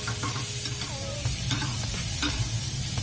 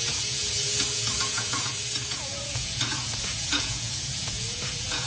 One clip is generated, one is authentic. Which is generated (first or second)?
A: second